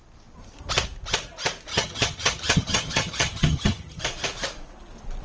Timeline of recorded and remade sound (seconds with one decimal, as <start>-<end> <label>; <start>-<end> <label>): 0.0-1.7 recorded; 1.7-4.0 remade; 4.0-5.2 recorded